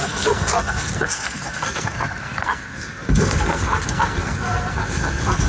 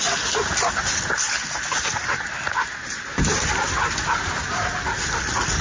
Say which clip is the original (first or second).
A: second